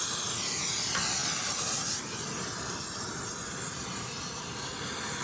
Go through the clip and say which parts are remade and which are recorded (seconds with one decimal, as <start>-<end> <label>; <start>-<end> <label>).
0.0-5.2 recorded